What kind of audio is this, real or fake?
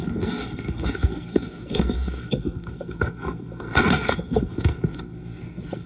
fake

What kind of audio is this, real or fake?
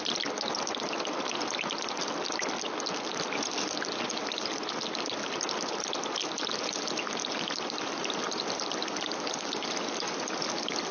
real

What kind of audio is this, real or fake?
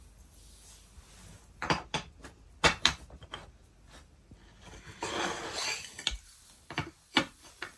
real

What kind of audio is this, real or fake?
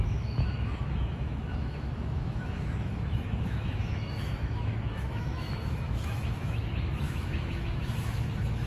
fake